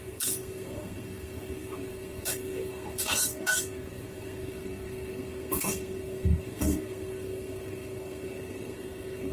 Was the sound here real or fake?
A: fake